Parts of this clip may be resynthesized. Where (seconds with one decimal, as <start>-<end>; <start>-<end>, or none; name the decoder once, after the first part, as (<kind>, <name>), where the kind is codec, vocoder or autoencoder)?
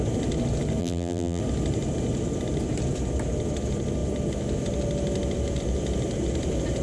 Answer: 0.8-1.4 (vocoder, BigVGAN v2)